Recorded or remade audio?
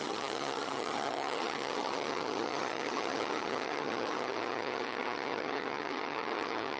remade